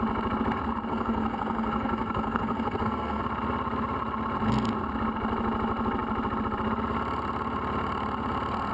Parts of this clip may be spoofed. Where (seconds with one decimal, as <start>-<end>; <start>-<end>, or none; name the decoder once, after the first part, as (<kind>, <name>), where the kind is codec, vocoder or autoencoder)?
0.9-3.2 (codec, SNAC)